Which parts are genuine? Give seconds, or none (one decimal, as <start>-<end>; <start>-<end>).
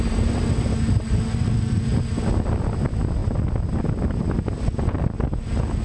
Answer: 0.0-5.8